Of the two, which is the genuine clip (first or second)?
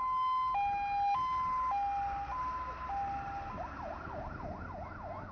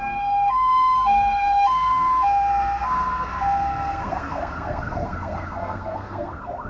first